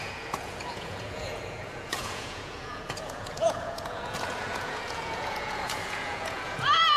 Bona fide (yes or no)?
no